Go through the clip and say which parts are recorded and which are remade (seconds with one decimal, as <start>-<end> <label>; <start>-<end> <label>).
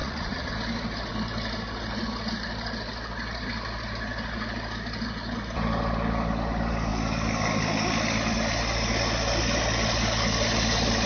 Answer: 0.0-0.5 remade; 0.5-11.1 recorded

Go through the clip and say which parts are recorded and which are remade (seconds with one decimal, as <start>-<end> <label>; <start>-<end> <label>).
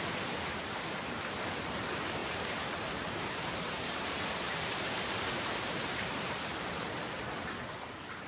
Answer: 0.0-2.2 recorded; 2.2-6.7 remade; 6.7-8.3 recorded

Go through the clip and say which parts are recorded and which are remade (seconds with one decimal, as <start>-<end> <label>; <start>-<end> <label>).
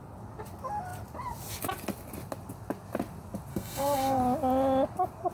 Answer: 0.0-3.5 recorded; 3.5-4.2 remade; 4.2-5.3 recorded